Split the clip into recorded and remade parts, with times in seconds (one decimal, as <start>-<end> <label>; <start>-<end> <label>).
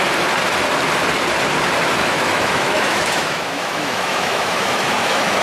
0.0-2.0 recorded; 2.0-5.4 remade